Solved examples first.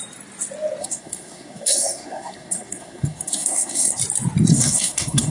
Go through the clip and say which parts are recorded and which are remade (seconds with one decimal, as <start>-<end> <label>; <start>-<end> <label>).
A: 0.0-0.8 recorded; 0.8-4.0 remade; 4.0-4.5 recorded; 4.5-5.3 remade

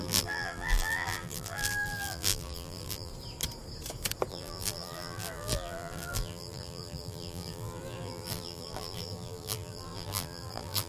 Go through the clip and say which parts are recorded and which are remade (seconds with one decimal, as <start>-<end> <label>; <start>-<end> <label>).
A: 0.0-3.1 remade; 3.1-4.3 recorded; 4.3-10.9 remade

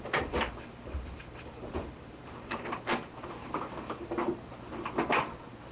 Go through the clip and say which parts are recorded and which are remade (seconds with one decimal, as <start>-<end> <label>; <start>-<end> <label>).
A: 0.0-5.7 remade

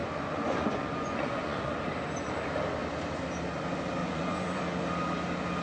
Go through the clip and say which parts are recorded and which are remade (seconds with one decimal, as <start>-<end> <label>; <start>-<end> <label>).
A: 0.0-1.8 remade; 1.8-4.0 recorded; 4.0-4.6 remade; 4.6-5.6 recorded

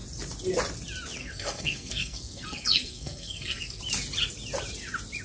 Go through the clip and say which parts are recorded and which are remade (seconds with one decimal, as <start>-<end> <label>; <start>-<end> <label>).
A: 0.0-1.2 recorded; 1.2-3.8 remade; 3.8-5.2 recorded

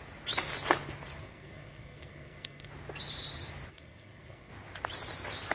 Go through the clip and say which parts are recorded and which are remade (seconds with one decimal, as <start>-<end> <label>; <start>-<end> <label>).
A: 0.0-1.2 recorded; 1.2-2.7 remade; 2.7-3.7 recorded; 3.7-4.5 remade; 4.5-5.5 recorded

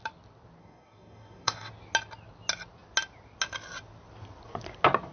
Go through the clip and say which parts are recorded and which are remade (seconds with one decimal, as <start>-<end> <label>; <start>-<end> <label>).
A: 0.0-0.6 recorded; 0.6-1.7 remade; 1.7-5.1 recorded